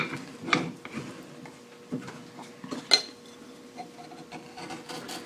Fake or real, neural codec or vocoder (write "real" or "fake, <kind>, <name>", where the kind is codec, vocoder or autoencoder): real